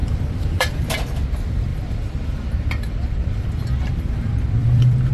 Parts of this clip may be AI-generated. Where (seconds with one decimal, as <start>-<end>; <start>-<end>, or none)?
0.0-0.8; 1.7-5.1